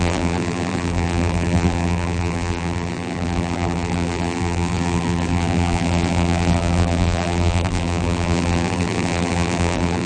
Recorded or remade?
remade